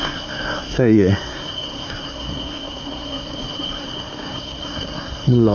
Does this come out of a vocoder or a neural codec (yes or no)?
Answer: yes